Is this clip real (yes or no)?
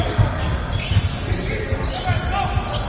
yes